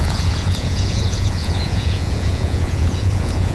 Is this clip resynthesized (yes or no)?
yes